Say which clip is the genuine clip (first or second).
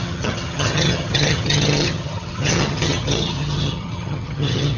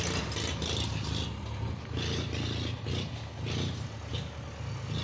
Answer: second